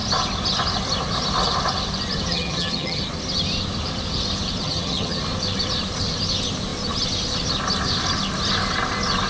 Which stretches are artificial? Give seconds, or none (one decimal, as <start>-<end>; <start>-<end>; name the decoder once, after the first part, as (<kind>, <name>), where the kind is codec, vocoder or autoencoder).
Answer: 2.3-3.0 (vocoder, HiFi-GAN); 4.6-5.2